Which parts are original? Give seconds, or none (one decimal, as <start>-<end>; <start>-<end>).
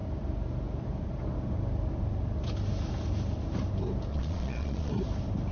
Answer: 0.0-4.1; 4.9-5.5